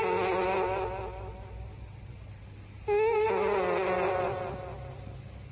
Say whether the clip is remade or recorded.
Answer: recorded